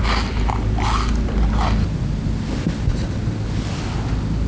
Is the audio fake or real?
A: real